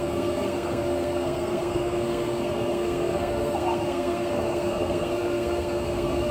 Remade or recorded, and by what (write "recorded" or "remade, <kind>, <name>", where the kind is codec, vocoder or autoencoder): remade, codec, SNAC